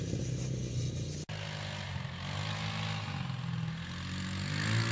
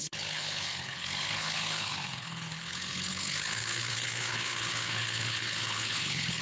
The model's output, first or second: second